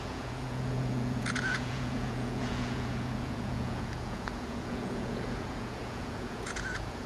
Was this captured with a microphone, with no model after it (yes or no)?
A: no